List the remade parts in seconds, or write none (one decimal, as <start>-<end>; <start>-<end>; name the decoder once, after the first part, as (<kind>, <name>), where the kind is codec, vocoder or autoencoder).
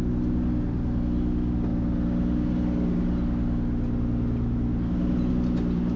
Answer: none